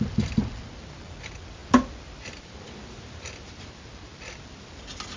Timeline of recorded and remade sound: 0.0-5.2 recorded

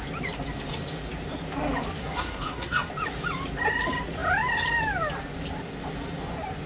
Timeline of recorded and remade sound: 0.0-2.0 recorded; 2.0-2.9 remade; 2.9-6.7 recorded